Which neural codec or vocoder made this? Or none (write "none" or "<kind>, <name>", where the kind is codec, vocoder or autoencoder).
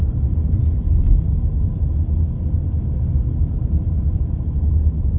none